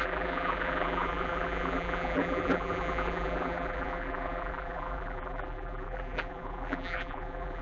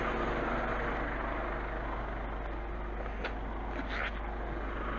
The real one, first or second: second